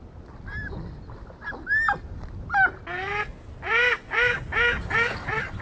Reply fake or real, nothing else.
real